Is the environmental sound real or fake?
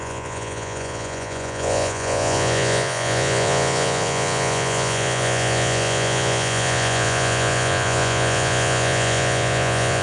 fake